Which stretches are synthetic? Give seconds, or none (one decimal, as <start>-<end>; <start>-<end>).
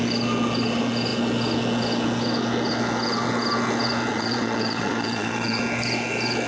4.1-5.6